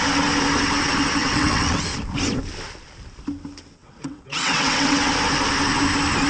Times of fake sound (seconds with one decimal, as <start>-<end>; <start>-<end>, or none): 1.2-1.8; 3.8-5.1